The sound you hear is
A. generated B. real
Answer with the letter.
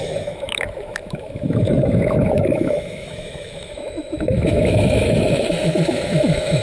A